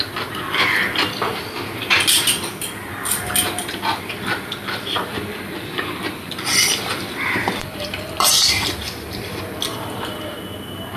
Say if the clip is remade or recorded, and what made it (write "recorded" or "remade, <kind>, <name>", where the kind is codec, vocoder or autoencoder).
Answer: remade, vocoder, BigVGAN v2